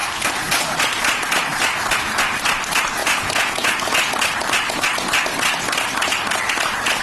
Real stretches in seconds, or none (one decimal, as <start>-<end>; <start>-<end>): 0.0-3.0; 4.1-7.0